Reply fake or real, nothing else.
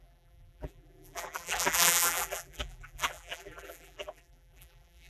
fake